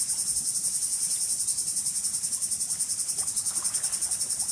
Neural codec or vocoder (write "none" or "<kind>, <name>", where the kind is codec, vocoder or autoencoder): none